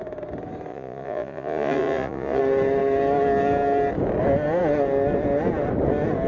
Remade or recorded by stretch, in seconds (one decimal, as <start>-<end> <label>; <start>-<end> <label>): 0.0-0.7 recorded; 0.7-2.4 remade; 2.4-6.3 recorded